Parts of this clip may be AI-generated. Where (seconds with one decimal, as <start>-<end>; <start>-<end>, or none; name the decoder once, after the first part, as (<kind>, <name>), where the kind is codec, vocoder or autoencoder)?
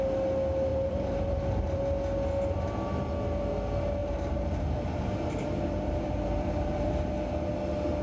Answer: 0.7-1.8 (vocoder, BigVGAN v2); 4.0-7.1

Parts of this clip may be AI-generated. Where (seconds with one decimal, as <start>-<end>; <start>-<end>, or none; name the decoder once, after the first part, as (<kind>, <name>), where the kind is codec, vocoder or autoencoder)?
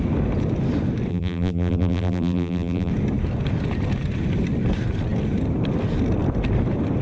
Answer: 1.1-2.9 (vocoder, BigVGAN v2)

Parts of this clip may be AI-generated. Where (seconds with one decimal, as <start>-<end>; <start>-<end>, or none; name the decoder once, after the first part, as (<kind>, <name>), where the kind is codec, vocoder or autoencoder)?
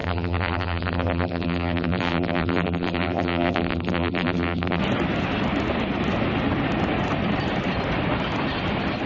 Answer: 0.0-4.8 (vocoder, BigVGAN v2)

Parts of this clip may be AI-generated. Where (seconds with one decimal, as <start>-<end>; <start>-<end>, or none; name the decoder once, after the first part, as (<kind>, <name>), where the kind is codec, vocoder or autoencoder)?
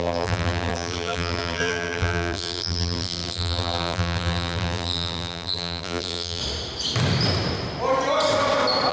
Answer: 0.0-6.4 (vocoder, BigVGAN v2)